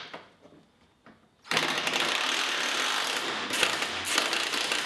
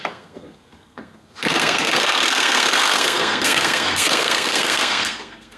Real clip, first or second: first